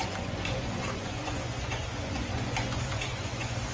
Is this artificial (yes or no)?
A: yes